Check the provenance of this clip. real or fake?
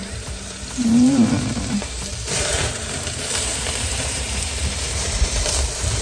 fake